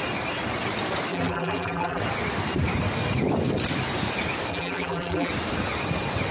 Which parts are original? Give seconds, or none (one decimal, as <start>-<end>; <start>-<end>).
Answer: 0.0-1.1; 2.0-4.5; 5.3-6.3